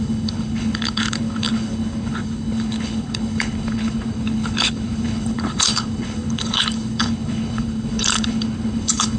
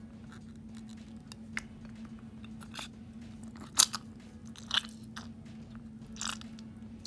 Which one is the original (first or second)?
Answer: second